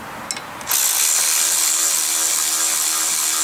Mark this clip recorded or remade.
recorded